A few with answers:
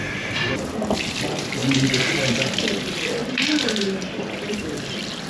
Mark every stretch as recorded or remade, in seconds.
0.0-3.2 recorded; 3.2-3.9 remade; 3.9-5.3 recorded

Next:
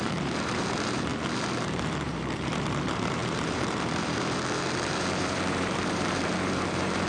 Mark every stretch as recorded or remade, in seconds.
0.0-7.1 remade

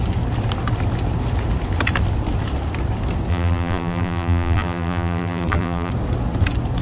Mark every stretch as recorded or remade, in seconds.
0.0-3.3 recorded; 3.3-5.9 remade; 5.9-6.8 recorded

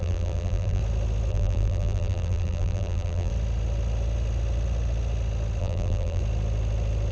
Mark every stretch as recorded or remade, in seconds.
0.0-0.8 remade; 0.8-1.3 recorded; 1.3-3.3 remade; 3.3-5.6 recorded; 5.6-6.2 remade; 6.2-7.1 recorded